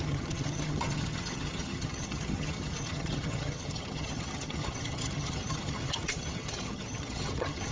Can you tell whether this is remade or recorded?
remade